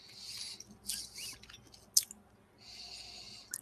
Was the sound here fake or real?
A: real